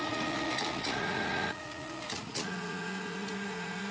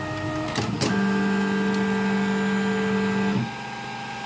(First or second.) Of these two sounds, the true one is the second